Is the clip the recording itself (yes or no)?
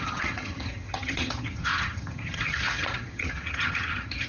no